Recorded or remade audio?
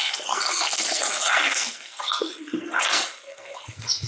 remade